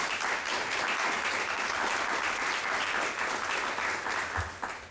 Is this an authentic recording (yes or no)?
yes